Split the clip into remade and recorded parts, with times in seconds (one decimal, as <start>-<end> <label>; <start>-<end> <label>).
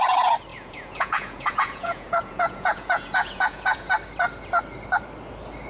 0.0-0.5 recorded; 0.5-3.9 remade; 3.9-5.7 recorded